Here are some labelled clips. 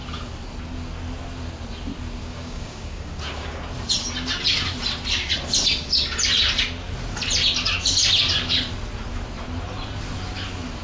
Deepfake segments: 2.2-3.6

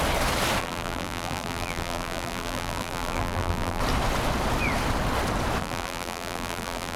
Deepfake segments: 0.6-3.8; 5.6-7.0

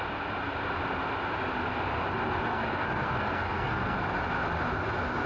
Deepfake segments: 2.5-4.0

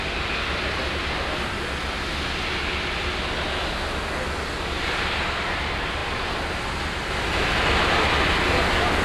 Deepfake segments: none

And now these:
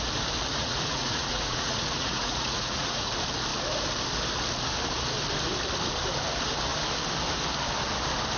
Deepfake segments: 0.5-3.1